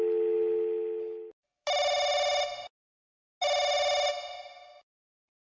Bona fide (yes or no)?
yes